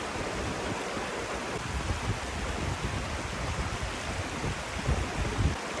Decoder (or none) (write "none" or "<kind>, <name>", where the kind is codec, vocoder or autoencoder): none